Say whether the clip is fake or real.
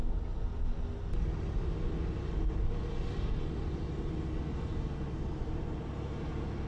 real